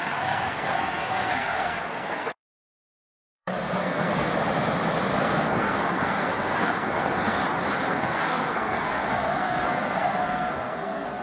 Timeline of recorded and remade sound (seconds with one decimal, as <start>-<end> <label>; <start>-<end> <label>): 0.0-4.3 remade; 4.3-5.2 recorded; 5.2-7.4 remade; 7.4-7.9 recorded; 7.9-11.2 remade